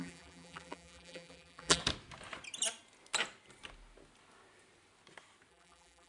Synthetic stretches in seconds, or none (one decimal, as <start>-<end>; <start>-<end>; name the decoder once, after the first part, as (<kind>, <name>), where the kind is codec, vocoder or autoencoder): 0.0-1.8 (vocoder, BigVGAN v2); 5.5-6.1